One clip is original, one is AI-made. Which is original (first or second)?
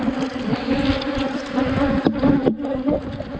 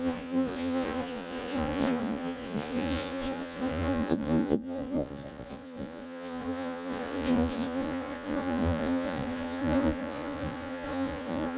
first